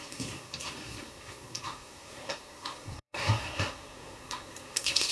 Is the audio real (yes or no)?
no